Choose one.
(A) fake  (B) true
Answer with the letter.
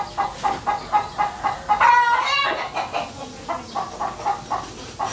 B